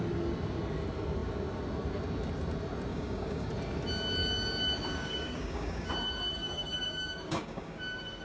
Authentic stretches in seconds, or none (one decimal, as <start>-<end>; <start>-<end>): 0.0-2.9; 3.5-4.2; 5.9-6.4